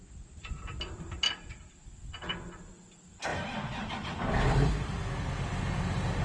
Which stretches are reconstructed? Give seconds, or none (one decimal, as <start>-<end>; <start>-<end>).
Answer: 0.0-6.2